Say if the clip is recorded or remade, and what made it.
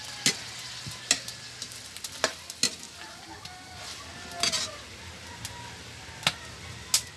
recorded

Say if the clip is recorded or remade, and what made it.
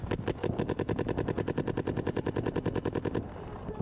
recorded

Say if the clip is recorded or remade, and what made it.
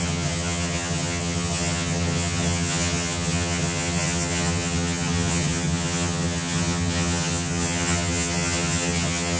remade, vocoder, HiFi-GAN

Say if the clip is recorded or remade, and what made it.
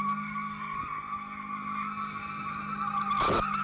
recorded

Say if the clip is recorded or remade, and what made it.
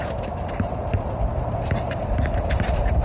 remade, vocoder, BigVGAN v2